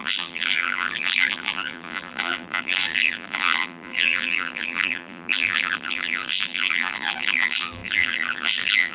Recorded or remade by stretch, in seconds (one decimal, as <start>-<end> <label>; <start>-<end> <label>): 0.0-8.9 remade